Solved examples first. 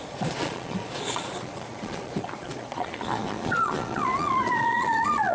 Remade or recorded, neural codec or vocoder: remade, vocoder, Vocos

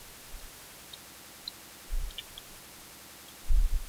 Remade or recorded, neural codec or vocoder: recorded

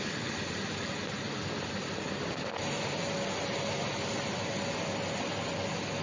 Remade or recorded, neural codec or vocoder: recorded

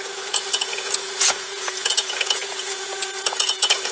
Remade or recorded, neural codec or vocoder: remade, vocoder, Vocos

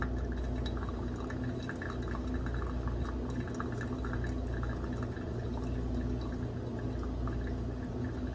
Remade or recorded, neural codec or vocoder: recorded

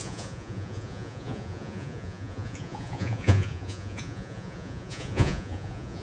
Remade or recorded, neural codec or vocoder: remade, vocoder, Vocos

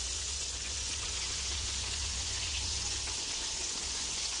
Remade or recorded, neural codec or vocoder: remade, vocoder, Vocos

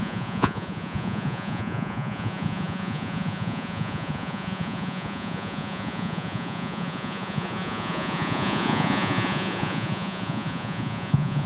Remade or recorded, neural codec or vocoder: remade, vocoder, Vocos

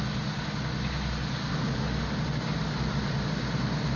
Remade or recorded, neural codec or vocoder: recorded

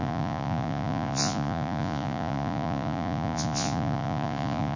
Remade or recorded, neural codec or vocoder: remade, vocoder, Vocos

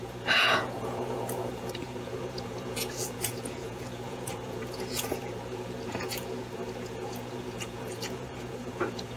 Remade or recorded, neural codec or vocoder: remade, vocoder, Vocos